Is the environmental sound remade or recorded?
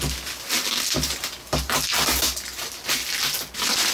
recorded